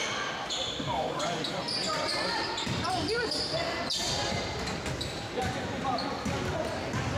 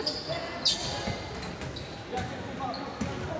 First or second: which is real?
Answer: second